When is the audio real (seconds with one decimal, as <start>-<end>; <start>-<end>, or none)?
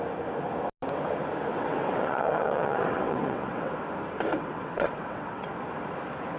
0.0-1.5; 3.8-4.3; 5.5-6.4